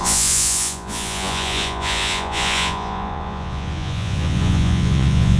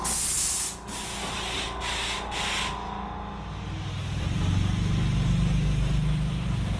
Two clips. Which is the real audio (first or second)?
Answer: second